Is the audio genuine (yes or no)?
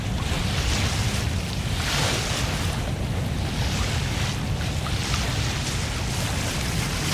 yes